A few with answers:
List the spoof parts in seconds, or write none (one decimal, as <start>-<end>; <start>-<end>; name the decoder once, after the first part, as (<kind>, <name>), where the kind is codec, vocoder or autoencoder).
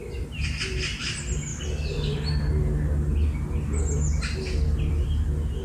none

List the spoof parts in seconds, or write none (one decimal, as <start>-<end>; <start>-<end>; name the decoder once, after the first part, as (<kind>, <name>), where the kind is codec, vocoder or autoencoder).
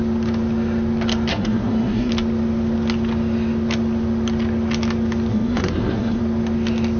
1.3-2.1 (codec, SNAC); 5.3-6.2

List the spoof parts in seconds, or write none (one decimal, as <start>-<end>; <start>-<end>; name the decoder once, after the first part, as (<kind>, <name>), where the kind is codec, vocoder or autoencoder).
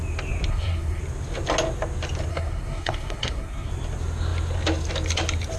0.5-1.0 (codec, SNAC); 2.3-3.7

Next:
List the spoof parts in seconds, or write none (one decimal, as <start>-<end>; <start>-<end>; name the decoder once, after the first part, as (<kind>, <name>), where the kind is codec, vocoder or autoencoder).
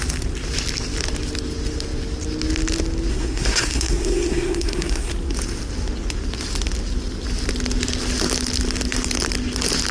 3.1-5.1 (codec, SNAC)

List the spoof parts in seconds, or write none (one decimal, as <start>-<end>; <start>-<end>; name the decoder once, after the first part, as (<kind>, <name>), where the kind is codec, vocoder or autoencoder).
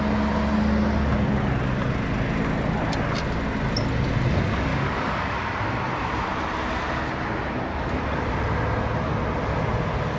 4.7-5.6 (codec, DAC); 7.7-8.2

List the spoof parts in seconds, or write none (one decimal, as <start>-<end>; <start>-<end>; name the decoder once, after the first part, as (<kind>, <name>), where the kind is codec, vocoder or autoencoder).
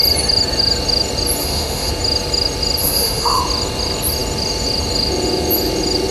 1.4-1.9 (autoencoder, DAC-VAE); 2.8-3.4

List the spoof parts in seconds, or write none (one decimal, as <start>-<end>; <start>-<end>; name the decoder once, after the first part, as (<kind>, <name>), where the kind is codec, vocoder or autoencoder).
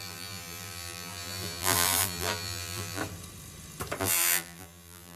0.0-3.0 (vocoder, BigVGAN v2); 4.0-5.2